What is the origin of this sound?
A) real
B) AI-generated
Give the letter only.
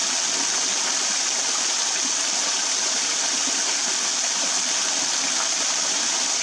A